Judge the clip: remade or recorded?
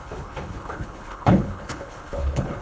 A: remade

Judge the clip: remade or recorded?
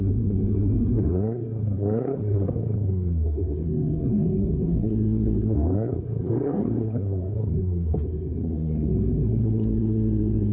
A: remade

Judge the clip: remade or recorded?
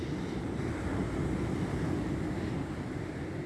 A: recorded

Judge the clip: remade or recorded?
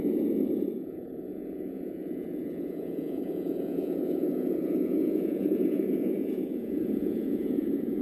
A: remade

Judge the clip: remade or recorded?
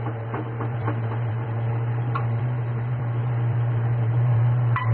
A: remade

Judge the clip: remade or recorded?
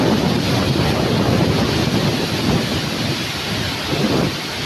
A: recorded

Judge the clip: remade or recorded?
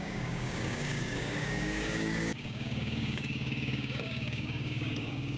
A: remade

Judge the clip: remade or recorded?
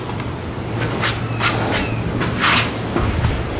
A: recorded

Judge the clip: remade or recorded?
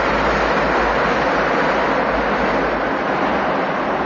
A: recorded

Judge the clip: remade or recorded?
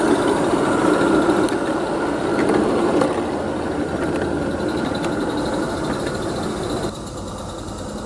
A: recorded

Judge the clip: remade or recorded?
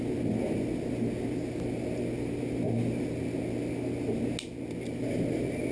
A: recorded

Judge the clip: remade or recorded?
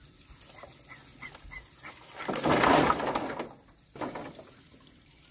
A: recorded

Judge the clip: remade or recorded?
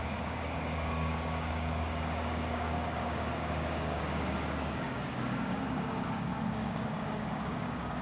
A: remade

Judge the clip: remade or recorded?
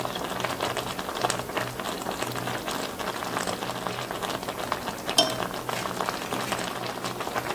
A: recorded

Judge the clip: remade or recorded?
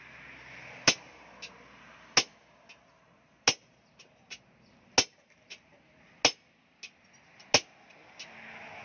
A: recorded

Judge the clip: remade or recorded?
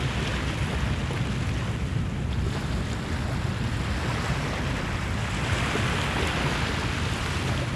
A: recorded